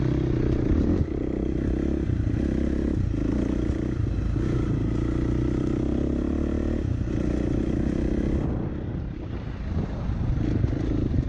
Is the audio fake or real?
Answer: real